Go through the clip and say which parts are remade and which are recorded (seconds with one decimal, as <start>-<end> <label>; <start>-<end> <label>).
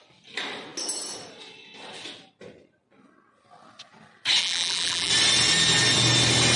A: 0.0-4.4 recorded; 4.4-5.1 remade; 5.1-6.6 recorded